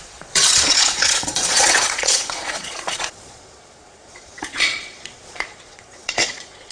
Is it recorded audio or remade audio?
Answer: remade